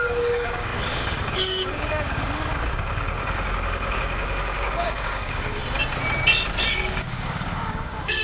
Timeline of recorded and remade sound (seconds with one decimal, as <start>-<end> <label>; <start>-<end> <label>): 0.0-5.6 remade; 5.6-6.7 recorded; 6.7-8.2 remade